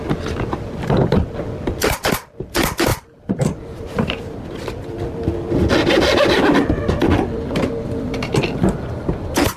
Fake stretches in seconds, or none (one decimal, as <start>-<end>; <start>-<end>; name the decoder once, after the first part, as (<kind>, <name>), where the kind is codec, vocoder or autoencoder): 2.9-5.0 (vocoder, BigVGAN v2)